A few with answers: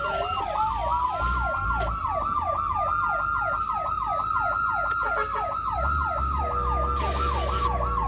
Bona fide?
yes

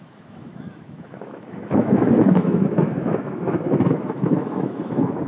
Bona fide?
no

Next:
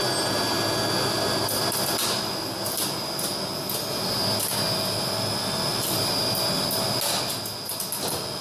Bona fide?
yes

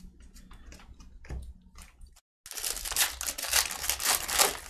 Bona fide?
yes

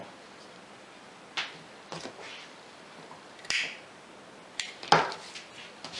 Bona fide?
yes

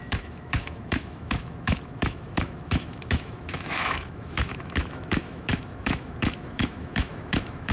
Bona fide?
no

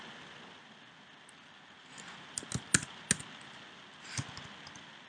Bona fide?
yes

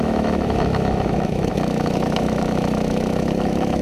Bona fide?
no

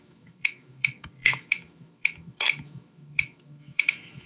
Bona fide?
no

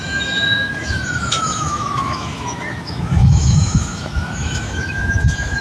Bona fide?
no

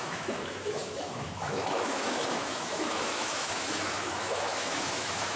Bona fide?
no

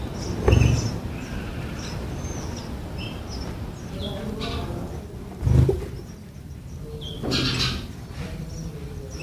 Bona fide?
yes